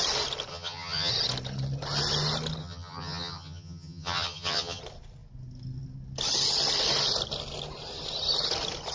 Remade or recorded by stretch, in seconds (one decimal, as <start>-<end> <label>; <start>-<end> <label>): 0.0-0.5 recorded; 0.5-1.1 remade; 1.1-2.6 recorded; 2.6-4.8 remade; 4.8-8.9 recorded